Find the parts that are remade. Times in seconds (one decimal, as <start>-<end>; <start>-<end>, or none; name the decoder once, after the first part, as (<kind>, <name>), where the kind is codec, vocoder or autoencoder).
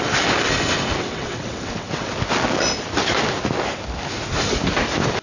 1.0-2.1 (vocoder, WaveNeXt)